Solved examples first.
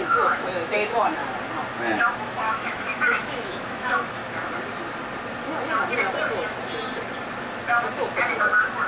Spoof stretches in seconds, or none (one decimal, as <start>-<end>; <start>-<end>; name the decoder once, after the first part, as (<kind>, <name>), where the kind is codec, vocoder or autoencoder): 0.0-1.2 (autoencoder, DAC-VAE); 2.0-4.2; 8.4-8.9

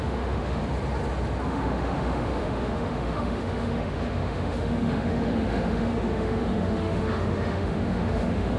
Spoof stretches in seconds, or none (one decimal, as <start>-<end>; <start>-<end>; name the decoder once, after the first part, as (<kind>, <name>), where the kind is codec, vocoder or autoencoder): 0.0-0.6 (autoencoder, DAC-VAE); 1.5-8.6

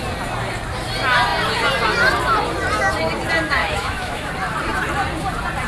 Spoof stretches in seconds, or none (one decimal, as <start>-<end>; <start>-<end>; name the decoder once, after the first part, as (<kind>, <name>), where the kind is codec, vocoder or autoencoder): 3.6-4.3 (autoencoder, DAC-VAE)

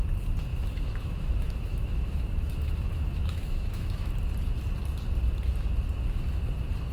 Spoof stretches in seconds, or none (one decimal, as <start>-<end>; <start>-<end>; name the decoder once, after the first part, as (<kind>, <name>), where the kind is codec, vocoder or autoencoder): 0.5-4.1 (autoencoder, DAC-VAE)

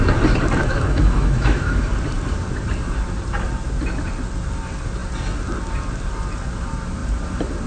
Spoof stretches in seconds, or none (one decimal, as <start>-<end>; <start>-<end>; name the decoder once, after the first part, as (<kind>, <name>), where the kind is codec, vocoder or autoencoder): 0.6-1.9 (autoencoder, DAC-VAE)